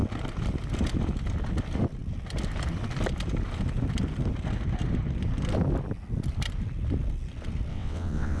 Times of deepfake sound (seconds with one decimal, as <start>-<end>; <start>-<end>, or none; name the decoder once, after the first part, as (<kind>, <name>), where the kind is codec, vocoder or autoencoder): 7.7-8.4 (vocoder, WaveNeXt)